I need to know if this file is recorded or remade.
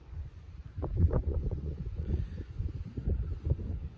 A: remade